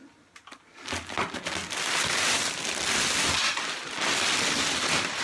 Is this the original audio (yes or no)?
yes